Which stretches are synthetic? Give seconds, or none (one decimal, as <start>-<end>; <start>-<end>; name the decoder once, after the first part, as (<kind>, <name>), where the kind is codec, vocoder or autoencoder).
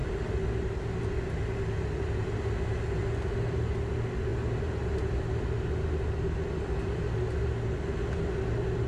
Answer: none